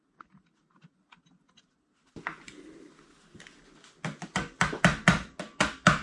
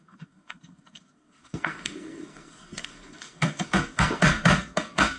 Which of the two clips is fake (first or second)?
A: second